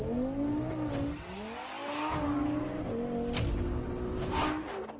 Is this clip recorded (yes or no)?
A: yes